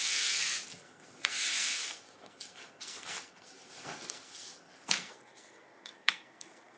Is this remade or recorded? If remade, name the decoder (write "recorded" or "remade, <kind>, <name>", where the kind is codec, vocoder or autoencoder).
remade, codec, SNAC